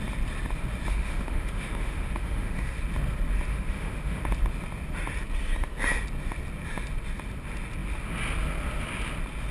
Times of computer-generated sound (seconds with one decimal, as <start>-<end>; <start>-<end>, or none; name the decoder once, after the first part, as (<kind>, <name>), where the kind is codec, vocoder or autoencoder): 0.9-2.8 (autoencoder, DAC-VAE); 3.5-4.2